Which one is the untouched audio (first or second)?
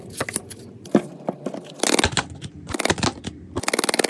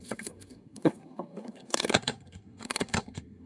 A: first